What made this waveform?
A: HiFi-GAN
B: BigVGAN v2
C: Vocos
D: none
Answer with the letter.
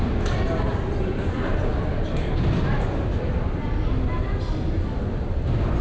D